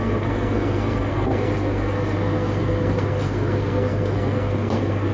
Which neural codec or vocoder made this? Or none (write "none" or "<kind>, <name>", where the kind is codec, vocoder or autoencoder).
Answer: codec, SNAC